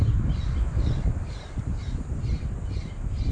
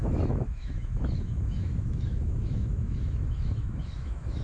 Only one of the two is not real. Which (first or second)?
second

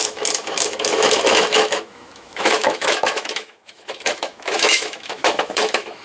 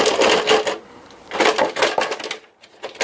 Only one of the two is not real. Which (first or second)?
first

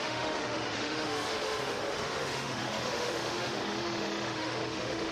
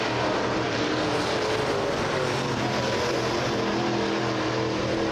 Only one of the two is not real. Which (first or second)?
first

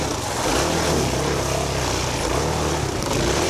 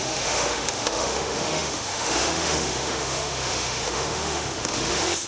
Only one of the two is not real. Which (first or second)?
second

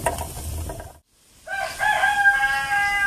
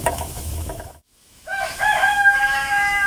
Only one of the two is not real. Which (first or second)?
second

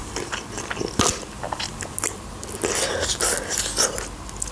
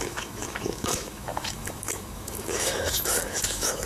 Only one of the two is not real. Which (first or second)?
second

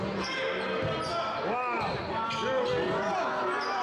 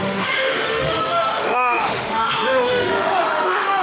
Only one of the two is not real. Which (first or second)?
second